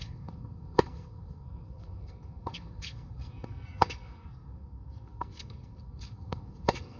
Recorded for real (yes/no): no